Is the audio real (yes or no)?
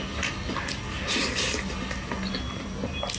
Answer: yes